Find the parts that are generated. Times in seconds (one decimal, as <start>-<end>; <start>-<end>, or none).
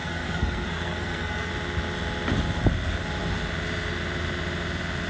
0.0-1.5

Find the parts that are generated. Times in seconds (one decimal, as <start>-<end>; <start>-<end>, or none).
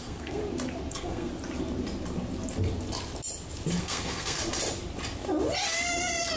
0.0-0.4; 0.9-1.3; 3.8-4.4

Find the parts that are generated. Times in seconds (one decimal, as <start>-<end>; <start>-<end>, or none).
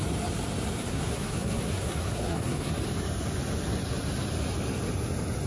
0.9-2.7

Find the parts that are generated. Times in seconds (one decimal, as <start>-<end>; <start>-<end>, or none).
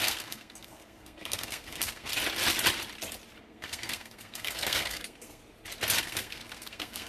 0.0-2.1; 3.4-5.4; 6.0-7.1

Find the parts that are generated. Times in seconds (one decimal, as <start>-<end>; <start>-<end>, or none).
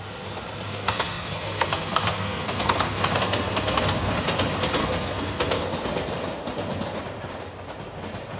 0.7-4.1; 4.8-5.6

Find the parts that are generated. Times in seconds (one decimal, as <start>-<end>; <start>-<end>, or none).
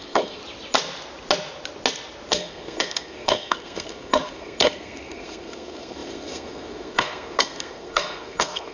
0.0-0.4; 2.3-8.7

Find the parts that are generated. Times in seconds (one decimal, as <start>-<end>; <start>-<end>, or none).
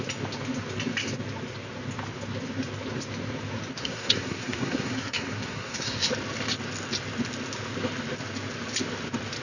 3.8-6.1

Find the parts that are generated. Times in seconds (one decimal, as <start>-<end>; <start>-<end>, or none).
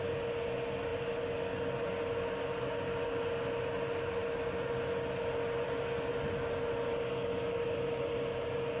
none